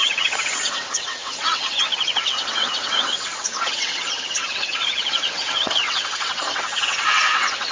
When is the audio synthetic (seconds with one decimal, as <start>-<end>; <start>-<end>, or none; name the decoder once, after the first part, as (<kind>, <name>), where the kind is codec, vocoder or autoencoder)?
0.0-7.7 (vocoder, WaveNeXt)